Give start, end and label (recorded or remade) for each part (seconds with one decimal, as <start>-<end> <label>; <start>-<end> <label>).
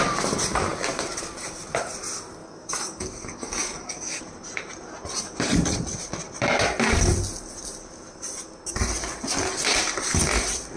0.0-2.4 recorded; 2.4-4.2 remade; 4.2-10.8 recorded